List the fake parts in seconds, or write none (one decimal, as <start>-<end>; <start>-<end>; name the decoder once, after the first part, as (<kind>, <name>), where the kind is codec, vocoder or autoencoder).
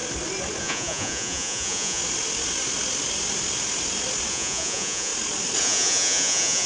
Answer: 0.6-2.0 (vocoder, Vocos); 4.3-5.1; 5.6-6.7